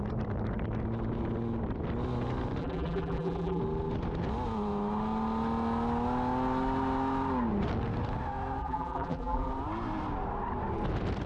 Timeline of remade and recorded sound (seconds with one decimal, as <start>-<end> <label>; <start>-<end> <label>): 0.0-2.6 recorded; 2.6-3.6 remade; 3.6-8.6 recorded; 8.6-9.5 remade; 9.5-11.3 recorded